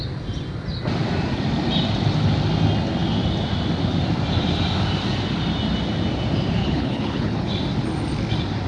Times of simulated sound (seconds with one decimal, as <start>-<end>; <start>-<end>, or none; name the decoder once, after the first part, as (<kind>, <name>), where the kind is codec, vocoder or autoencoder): 6.6-7.5 (codec, HILCodec)